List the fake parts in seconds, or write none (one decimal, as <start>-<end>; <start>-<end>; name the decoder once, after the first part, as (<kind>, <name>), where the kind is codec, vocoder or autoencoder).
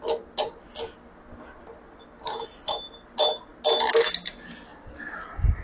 none